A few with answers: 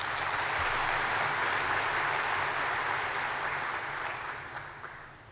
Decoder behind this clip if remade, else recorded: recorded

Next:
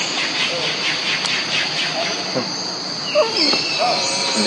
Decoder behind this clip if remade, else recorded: recorded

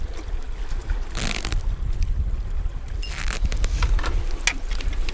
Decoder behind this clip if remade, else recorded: recorded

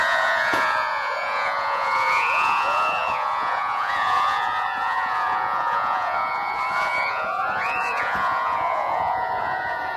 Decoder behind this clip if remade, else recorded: remade, vocoder, Vocos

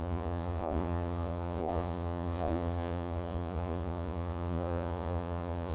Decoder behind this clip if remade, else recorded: remade, vocoder, Vocos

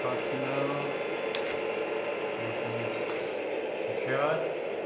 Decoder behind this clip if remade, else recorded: recorded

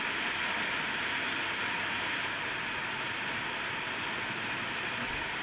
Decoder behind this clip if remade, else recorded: recorded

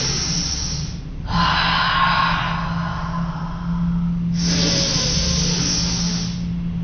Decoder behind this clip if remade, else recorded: recorded